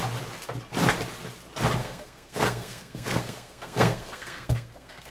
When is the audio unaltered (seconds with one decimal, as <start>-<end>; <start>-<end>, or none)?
0.0-1.8